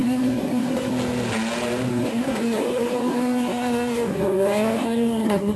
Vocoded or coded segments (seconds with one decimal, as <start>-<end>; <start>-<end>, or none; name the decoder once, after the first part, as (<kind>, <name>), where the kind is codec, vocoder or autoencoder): 0.0-0.9 (codec, SNAC); 1.9-5.6